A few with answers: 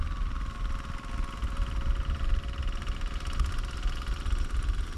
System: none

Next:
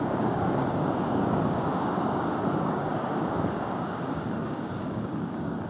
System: codec, DAC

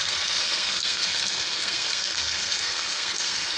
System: codec, SNAC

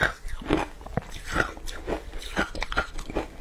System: vocoder, BigVGAN v2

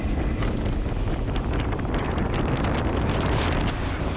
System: vocoder, BigVGAN v2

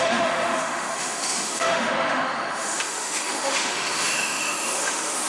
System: autoencoder, DAC-VAE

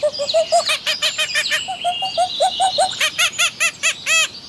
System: none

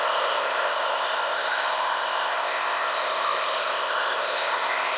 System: codec, ZipCodec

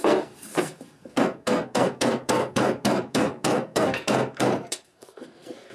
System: codec, SNAC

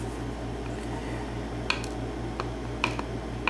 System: none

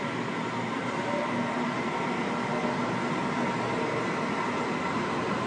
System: none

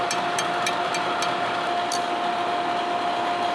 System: none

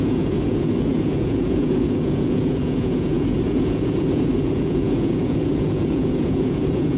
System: vocoder, Vocos